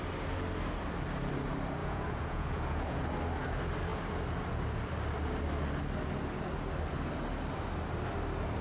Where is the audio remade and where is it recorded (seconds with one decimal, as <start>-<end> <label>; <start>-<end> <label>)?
0.0-1.8 recorded; 1.8-3.0 remade; 3.0-8.6 recorded